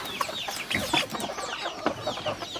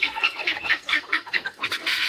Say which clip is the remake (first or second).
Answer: second